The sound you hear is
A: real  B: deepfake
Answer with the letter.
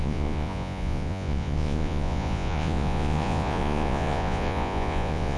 B